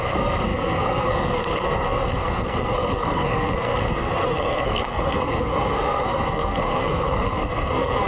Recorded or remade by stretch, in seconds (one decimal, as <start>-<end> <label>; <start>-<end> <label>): 0.0-8.1 remade